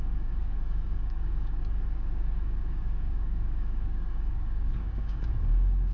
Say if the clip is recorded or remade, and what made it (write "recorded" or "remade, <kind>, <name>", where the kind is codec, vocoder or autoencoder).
remade, codec, DAC